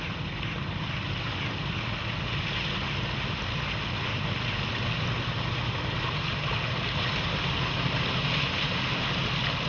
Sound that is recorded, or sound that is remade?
recorded